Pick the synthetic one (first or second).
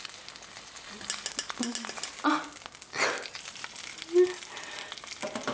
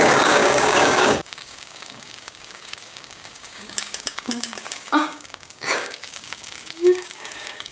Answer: second